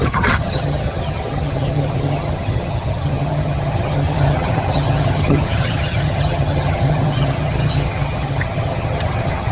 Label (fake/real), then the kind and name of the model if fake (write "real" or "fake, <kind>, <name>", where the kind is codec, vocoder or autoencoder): fake, vocoder, HiFi-GAN